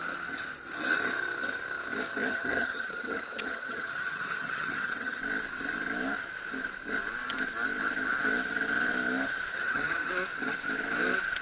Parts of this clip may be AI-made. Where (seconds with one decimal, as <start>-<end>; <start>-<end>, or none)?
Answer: 2.3-5.2; 9.5-10.1